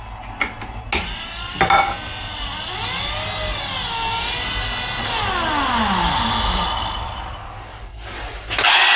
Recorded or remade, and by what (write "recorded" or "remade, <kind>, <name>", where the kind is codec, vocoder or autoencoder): recorded